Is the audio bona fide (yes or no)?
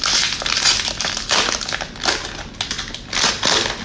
yes